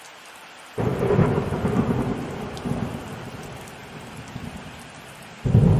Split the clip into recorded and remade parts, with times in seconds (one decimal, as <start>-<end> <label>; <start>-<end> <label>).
0.0-5.8 recorded